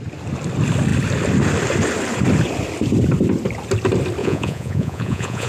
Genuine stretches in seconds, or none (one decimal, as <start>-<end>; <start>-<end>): 0.0-4.2